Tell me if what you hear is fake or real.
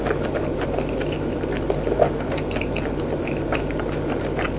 real